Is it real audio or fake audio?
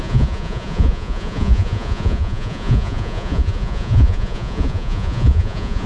fake